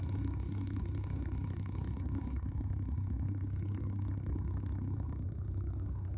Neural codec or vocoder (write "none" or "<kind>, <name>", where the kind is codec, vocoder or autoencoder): codec, SNAC